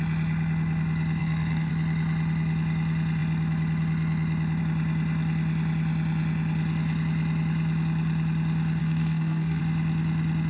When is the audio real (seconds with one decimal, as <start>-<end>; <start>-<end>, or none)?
0.0-1.2; 1.7-8.8; 9.6-10.5